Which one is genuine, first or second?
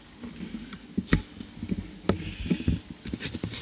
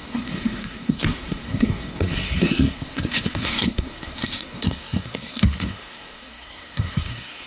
first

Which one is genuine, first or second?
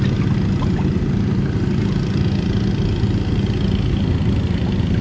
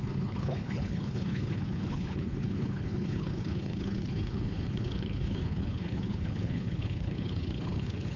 first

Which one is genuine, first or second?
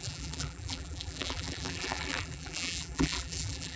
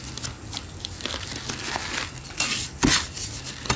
second